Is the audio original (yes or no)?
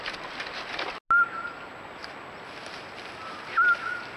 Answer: yes